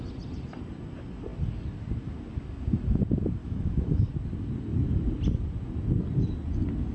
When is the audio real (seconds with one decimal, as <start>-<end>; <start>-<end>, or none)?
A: 0.0-3.4; 4.1-6.9